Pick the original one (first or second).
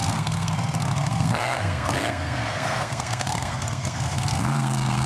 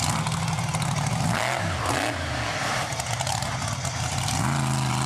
second